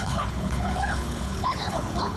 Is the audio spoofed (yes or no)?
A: yes